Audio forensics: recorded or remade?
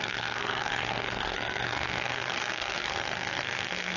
remade